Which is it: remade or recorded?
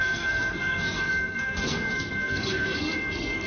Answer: remade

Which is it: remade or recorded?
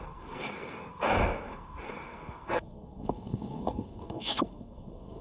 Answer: remade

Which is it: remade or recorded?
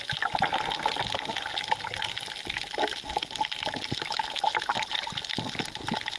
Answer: recorded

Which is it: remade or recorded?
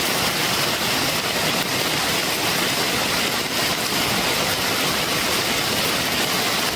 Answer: recorded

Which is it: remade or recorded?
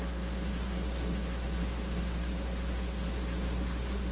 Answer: remade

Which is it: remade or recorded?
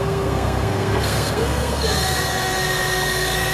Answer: remade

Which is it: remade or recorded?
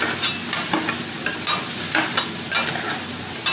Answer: recorded